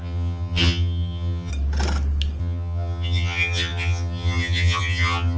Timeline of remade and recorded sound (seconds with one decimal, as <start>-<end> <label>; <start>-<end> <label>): 0.0-1.5 remade; 1.5-2.4 recorded; 2.4-5.4 remade